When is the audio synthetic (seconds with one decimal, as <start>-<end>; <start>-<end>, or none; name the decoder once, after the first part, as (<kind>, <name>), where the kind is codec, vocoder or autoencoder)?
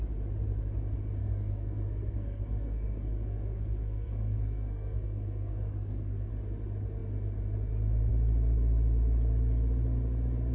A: 1.2-6.3 (codec, SNAC)